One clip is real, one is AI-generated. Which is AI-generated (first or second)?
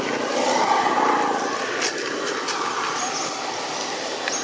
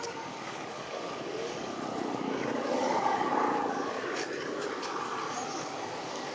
second